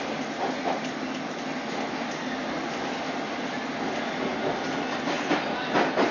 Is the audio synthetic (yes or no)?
no